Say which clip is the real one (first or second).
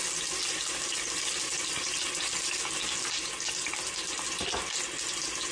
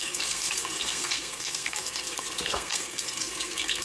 first